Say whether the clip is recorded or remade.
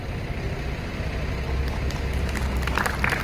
recorded